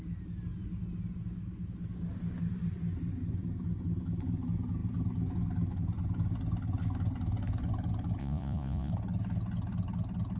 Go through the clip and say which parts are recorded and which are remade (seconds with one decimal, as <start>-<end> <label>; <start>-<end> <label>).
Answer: 0.0-8.2 recorded; 8.2-8.9 remade; 8.9-10.4 recorded